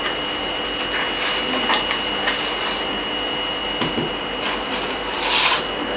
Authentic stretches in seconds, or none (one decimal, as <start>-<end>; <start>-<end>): 0.0-6.0